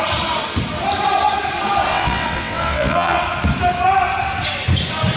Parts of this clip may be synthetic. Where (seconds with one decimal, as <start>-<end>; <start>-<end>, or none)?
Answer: 1.9-3.2